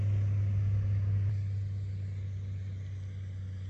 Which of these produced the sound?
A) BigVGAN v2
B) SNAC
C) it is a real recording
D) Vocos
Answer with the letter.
C